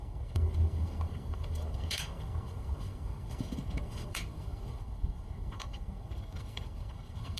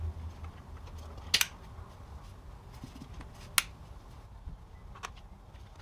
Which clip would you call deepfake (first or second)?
first